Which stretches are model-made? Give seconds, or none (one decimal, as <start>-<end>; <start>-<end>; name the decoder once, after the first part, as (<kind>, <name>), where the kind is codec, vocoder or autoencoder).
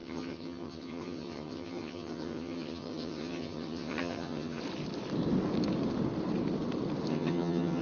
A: 0.0-4.6 (vocoder, HiFi-GAN); 7.1-7.8